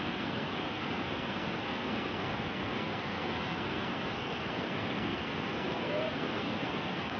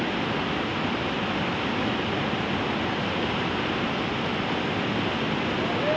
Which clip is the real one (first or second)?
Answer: second